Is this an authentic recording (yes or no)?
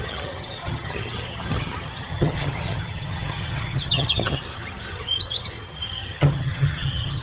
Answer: no